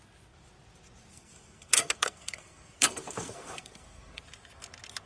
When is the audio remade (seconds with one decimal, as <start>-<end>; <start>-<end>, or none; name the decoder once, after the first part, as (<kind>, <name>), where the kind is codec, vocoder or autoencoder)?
1.1-4.2 (codec, SNAC)